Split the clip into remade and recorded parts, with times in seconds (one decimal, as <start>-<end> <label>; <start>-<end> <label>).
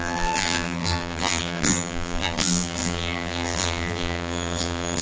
0.0-5.0 remade